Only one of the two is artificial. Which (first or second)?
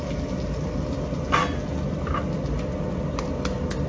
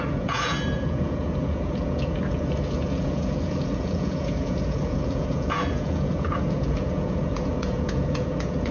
second